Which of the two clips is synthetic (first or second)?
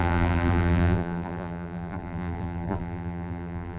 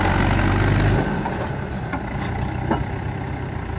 first